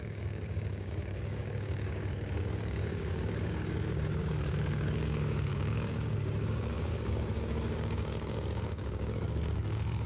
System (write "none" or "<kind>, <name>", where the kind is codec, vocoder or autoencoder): codec, DAC